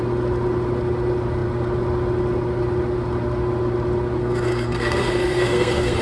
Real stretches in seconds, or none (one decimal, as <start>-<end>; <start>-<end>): 0.0-4.2